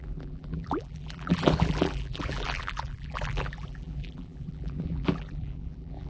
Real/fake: fake